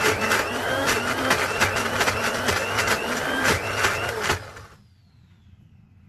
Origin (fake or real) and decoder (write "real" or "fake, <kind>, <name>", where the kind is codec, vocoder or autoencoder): real